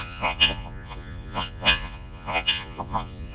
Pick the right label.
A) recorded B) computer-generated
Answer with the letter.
B